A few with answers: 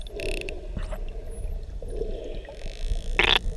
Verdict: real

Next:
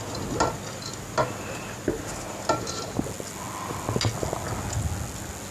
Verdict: real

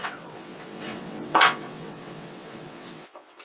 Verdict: fake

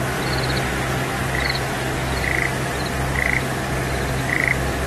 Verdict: real